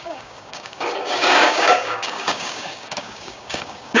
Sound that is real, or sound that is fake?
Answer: fake